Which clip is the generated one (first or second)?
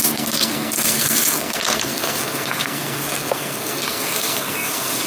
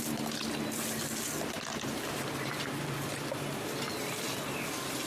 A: first